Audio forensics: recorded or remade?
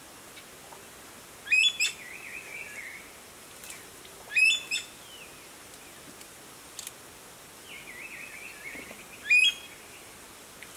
recorded